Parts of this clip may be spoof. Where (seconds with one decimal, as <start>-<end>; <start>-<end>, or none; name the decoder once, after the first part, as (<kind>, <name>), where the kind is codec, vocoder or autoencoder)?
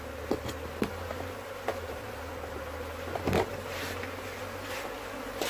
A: none